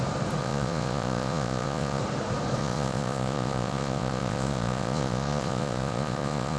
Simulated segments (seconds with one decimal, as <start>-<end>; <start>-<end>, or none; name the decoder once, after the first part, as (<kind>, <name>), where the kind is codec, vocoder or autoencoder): 0.4-2.0 (vocoder, Vocos); 2.6-6.6